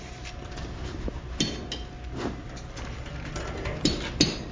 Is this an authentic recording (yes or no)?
yes